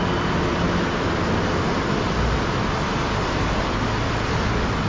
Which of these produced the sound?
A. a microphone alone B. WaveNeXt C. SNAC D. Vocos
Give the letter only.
A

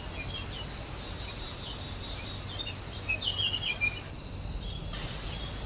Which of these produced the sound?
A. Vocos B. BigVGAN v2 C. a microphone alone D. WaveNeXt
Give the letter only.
C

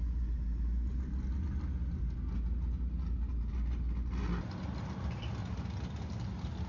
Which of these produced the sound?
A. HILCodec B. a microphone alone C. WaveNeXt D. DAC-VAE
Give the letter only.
B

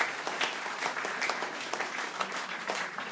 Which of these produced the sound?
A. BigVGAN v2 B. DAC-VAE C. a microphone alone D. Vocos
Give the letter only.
C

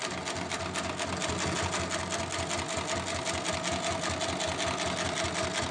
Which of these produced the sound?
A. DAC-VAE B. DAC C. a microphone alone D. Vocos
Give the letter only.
C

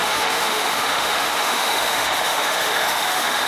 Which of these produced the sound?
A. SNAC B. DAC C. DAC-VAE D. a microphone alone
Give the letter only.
C